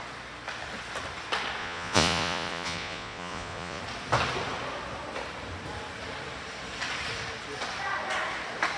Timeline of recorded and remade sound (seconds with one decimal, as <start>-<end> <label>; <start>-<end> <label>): 0.0-1.6 recorded; 1.6-3.8 remade; 3.8-8.8 recorded